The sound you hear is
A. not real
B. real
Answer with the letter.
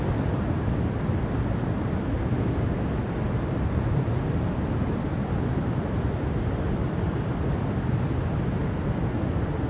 B